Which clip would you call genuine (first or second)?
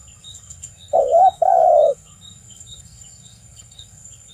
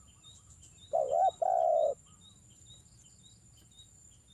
second